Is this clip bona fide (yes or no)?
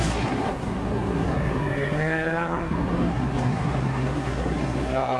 no